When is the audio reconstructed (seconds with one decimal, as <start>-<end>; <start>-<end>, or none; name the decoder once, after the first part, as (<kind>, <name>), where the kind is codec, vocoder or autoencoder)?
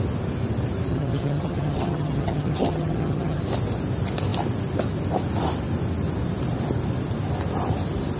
0.9-3.4 (vocoder, HiFi-GAN)